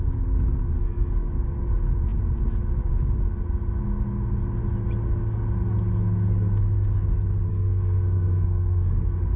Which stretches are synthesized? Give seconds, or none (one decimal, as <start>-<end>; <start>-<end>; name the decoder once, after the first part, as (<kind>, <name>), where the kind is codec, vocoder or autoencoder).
0.8-1.3 (codec, SNAC); 7.5-9.4